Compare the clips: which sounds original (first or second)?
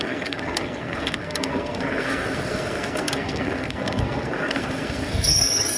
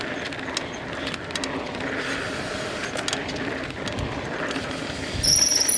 second